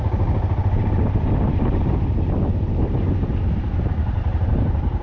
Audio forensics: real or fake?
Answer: real